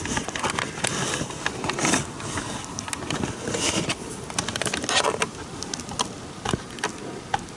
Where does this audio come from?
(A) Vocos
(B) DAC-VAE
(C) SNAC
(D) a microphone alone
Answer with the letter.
D